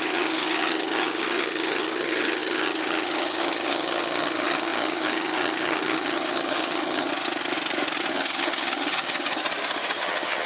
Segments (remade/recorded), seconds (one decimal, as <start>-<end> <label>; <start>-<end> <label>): 0.0-7.1 remade; 7.1-8.1 recorded; 8.1-9.4 remade; 9.4-10.0 recorded; 10.0-10.5 remade